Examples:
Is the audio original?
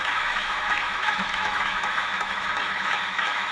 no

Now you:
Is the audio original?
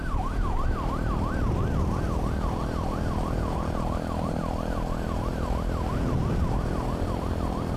yes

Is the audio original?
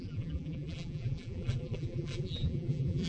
no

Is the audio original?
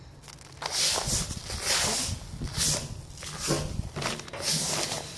yes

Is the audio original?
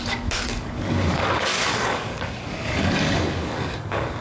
no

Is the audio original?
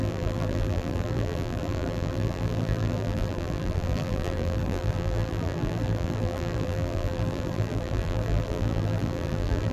no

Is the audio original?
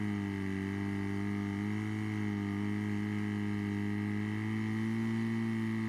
yes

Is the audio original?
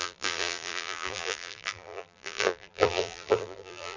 no